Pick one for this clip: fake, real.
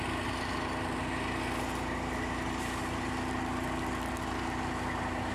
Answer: real